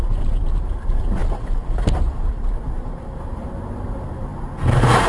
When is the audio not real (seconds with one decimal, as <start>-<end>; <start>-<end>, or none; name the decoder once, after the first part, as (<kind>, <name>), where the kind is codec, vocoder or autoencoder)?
0.0-1.2 (vocoder, BigVGAN v2); 1.7-4.3